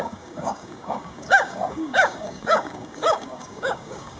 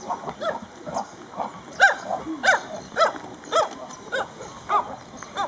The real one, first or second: second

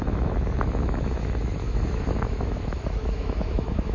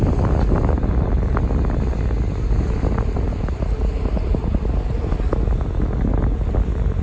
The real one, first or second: second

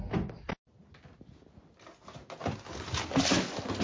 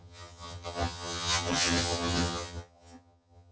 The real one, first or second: first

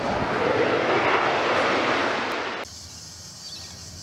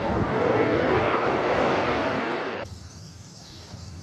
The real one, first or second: first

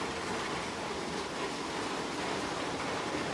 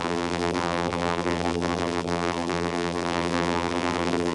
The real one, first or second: first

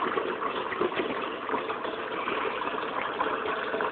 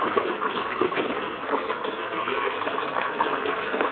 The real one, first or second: first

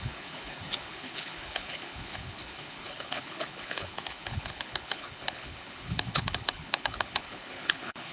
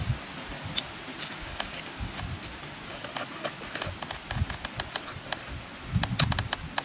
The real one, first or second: second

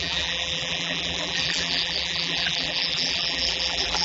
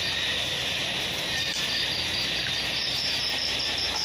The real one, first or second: second